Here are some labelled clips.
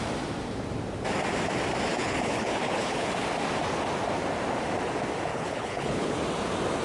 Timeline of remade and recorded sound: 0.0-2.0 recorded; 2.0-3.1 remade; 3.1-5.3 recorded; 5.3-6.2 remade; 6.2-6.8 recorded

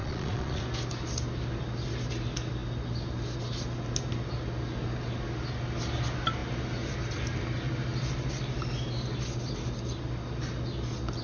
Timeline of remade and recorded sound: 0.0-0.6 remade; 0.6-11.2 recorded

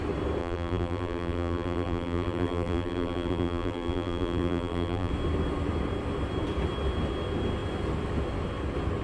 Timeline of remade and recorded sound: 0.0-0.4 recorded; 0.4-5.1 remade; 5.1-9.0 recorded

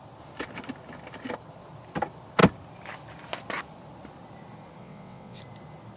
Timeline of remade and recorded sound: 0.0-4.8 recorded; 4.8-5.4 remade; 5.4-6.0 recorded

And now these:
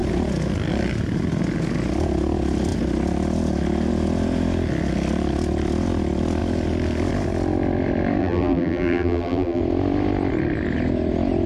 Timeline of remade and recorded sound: 0.0-8.2 recorded; 8.2-9.6 remade; 9.6-11.5 recorded

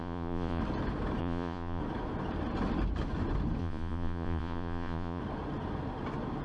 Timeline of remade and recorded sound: 0.0-0.6 remade; 0.6-1.2 recorded; 1.2-1.8 remade; 1.8-3.6 recorded; 3.6-5.2 remade; 5.2-6.4 recorded

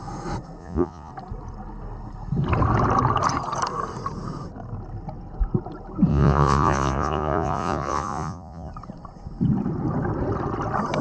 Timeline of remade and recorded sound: 0.0-0.6 recorded; 0.6-1.1 remade; 1.1-6.1 recorded; 6.1-8.7 remade; 8.7-11.0 recorded

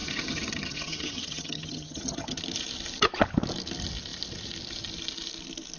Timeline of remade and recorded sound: 0.0-2.4 remade; 2.4-5.8 recorded